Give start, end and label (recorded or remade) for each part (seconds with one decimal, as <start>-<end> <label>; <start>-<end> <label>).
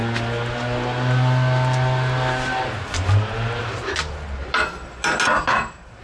0.0-6.0 recorded